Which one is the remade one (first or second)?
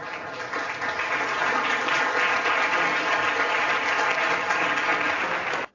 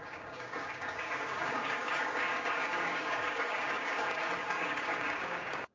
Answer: second